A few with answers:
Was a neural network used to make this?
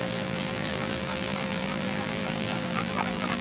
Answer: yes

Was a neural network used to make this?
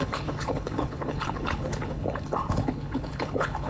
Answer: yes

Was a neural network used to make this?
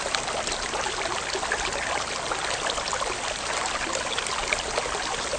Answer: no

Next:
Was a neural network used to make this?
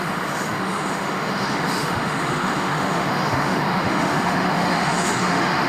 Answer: yes